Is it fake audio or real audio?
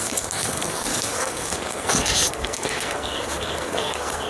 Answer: fake